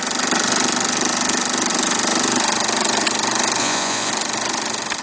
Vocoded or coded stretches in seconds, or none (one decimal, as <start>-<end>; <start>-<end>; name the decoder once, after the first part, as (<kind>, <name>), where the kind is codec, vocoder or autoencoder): 3.6-4.1 (vocoder, Vocos)